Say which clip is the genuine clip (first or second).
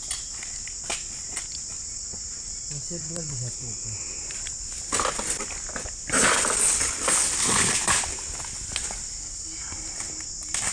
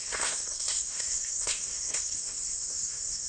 first